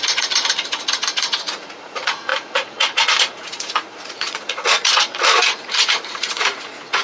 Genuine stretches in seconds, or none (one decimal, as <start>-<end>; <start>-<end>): none